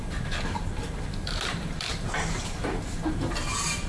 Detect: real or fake fake